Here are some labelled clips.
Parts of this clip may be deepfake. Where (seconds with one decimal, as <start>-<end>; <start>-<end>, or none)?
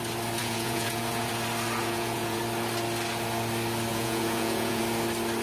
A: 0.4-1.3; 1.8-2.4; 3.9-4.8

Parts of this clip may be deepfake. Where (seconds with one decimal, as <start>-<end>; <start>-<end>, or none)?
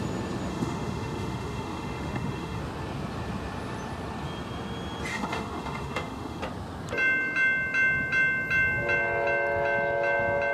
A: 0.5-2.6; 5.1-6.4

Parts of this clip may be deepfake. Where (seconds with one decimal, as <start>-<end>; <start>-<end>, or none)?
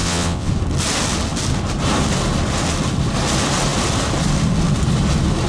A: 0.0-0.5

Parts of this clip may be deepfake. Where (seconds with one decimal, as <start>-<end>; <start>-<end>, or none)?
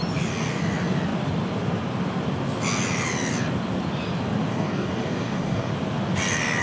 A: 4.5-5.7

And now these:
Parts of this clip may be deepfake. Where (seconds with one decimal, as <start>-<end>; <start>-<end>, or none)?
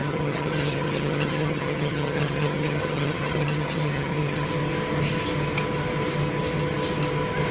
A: 0.0-4.5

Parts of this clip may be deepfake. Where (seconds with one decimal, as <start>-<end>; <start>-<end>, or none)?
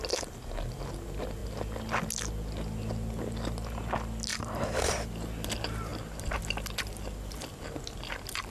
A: 4.3-5.1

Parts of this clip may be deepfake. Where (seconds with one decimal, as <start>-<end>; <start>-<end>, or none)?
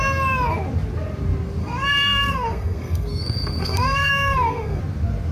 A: 1.6-4.8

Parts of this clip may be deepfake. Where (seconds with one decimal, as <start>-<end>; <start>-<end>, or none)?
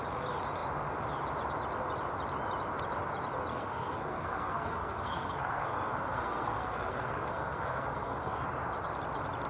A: 3.5-8.4